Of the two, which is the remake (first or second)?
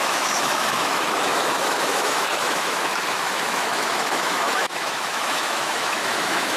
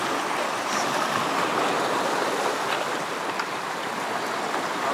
first